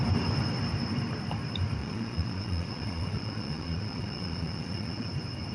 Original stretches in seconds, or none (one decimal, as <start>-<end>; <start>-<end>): 0.0-1.8; 5.1-5.5

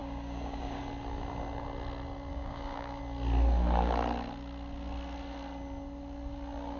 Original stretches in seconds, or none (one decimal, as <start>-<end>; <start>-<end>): 0.8-2.3; 3.0-6.8

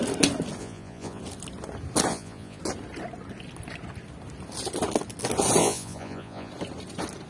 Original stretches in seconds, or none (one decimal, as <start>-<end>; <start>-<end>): 0.0-0.6; 1.2-2.1; 2.6-5.6; 6.5-7.3